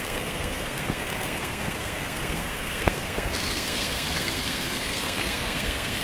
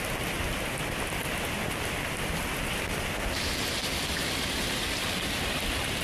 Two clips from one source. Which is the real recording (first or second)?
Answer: second